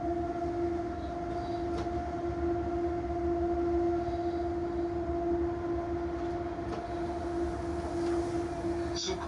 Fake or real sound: real